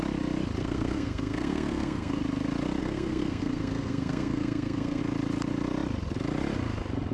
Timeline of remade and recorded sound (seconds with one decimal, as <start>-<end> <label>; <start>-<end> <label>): 0.0-0.6 recorded; 0.6-2.2 remade; 2.2-2.8 recorded; 2.8-5.0 remade; 5.0-7.1 recorded